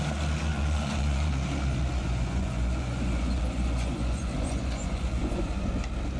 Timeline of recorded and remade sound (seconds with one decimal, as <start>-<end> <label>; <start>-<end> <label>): 0.0-0.5 recorded; 0.5-1.3 remade; 1.3-2.0 recorded; 2.0-5.7 remade; 5.7-6.2 recorded